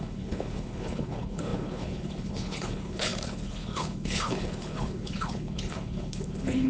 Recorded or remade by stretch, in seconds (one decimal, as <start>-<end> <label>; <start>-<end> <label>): 0.0-6.7 remade